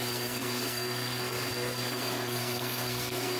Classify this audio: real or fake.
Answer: fake